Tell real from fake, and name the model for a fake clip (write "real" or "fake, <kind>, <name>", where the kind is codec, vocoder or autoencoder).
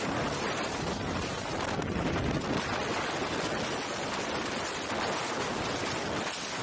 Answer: real